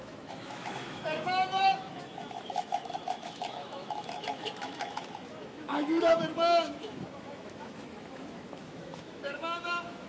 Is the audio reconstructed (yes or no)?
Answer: yes